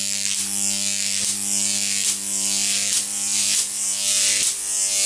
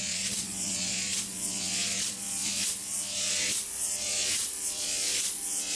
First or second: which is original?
first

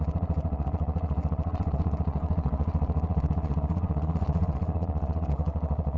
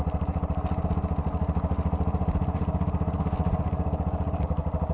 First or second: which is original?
second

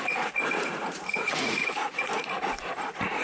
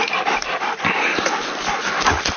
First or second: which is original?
second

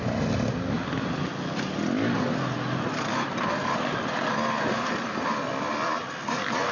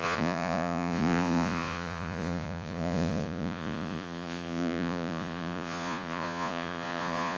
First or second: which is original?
first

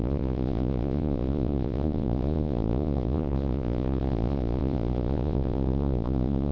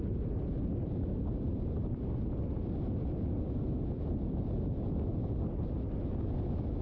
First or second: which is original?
second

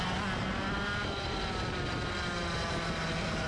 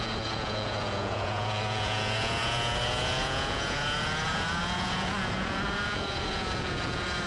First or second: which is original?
first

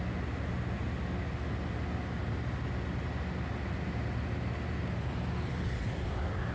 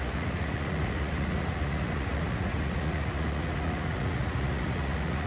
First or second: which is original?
first